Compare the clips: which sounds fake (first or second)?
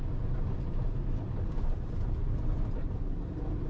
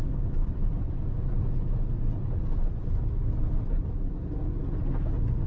first